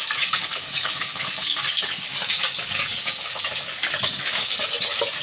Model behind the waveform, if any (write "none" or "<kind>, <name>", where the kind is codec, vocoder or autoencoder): codec, DAC